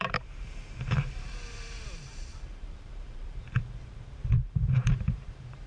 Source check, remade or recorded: remade